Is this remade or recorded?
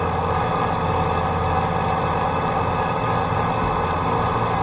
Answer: recorded